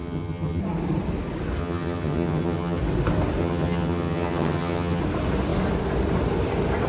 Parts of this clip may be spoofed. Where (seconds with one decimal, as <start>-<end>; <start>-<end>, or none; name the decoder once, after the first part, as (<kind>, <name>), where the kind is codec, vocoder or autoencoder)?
0.0-0.6 (vocoder, HiFi-GAN); 1.6-2.8; 3.4-5.0